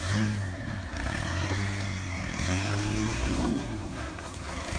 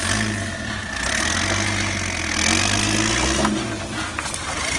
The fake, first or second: first